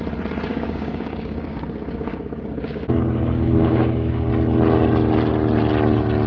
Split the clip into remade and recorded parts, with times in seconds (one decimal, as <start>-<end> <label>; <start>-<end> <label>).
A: 0.0-0.5 recorded; 0.5-4.3 remade; 4.3-6.3 recorded